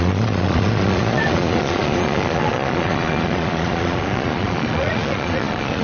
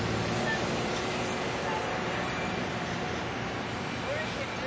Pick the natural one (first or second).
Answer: second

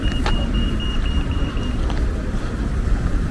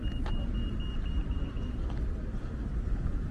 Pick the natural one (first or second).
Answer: second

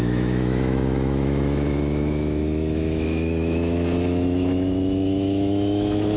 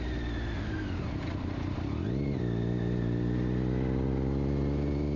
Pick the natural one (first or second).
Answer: second